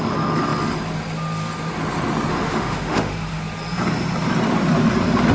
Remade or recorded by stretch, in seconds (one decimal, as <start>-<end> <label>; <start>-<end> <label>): 0.0-2.3 recorded; 2.3-3.4 remade; 3.4-5.3 recorded